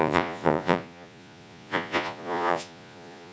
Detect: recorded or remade remade